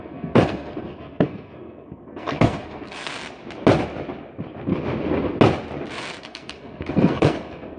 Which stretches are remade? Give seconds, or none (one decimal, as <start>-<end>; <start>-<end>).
0.0-3.1; 6.2-7.8